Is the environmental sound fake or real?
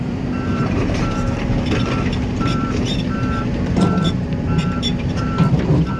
fake